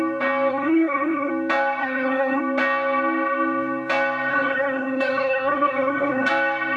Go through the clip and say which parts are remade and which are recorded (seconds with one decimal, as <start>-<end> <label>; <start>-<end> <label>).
0.0-0.5 recorded; 0.5-1.3 remade; 1.3-1.8 recorded; 1.8-2.4 remade; 2.4-4.3 recorded; 4.3-6.3 remade; 6.3-6.8 recorded